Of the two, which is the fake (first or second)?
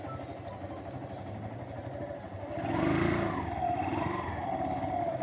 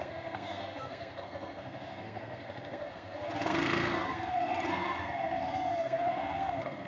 second